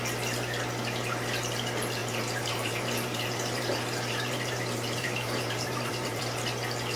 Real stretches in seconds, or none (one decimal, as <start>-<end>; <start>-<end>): 0.0-2.0; 6.2-7.0